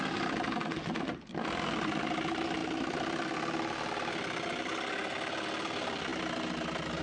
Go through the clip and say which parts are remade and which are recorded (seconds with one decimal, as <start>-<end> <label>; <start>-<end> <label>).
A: 0.0-7.0 recorded